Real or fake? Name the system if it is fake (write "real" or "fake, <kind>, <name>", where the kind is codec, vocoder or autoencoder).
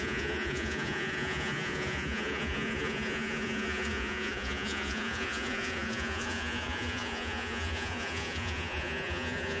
fake, vocoder, Vocos